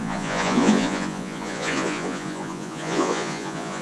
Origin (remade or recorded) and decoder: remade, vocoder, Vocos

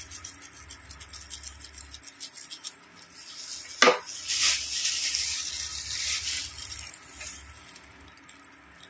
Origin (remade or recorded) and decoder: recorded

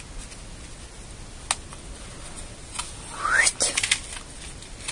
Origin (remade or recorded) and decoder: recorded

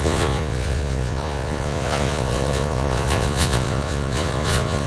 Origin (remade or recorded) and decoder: remade, vocoder, Vocos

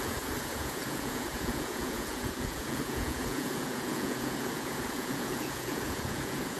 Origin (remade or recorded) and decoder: remade, vocoder, Vocos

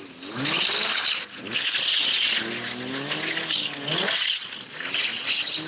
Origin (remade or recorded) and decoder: recorded